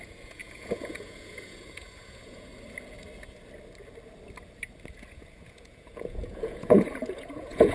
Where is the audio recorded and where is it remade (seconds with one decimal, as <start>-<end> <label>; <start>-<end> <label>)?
0.0-2.5 remade; 2.5-4.9 recorded; 4.9-7.7 remade